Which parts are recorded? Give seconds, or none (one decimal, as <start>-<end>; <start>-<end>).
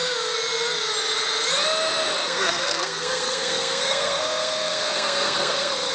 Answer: 0.0-2.2